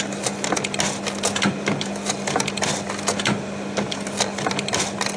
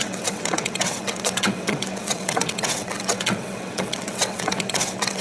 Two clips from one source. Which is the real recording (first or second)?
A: first